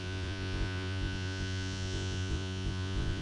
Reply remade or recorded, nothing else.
remade